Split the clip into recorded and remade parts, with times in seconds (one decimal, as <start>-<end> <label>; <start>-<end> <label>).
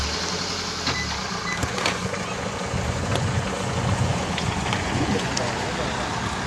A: 0.0-1.6 recorded; 1.6-5.5 remade; 5.5-6.5 recorded